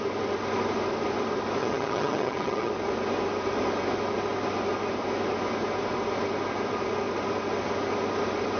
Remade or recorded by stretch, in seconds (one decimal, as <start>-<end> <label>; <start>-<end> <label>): 0.0-1.6 recorded; 1.6-2.7 remade; 2.7-8.6 recorded